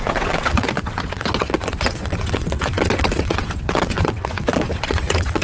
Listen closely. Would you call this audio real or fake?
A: fake